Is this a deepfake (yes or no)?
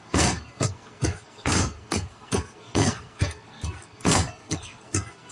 yes